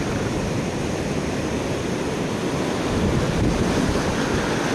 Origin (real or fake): real